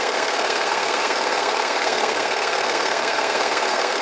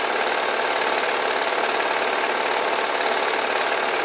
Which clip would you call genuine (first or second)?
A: second